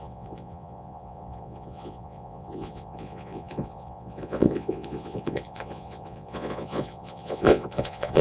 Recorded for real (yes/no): no